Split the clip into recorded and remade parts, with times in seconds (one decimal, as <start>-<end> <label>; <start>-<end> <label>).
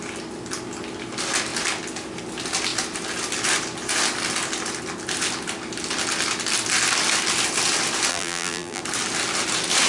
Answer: 0.0-8.1 recorded; 8.1-8.8 remade; 8.8-9.9 recorded